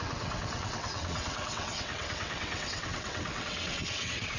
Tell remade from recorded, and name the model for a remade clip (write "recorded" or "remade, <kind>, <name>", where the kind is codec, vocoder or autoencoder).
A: remade, vocoder, WaveNeXt